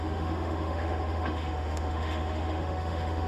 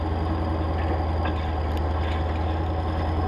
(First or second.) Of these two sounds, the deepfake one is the first